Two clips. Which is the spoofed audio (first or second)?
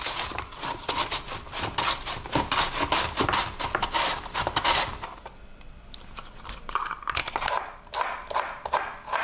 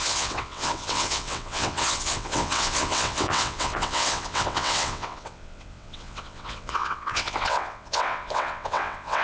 second